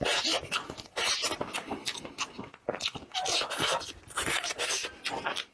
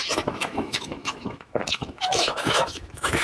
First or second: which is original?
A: first